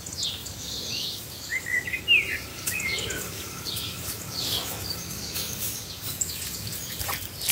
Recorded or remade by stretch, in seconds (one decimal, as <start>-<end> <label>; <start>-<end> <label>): 0.0-0.4 recorded; 0.4-2.0 remade; 2.0-2.5 recorded; 2.5-7.0 remade; 7.0-7.5 recorded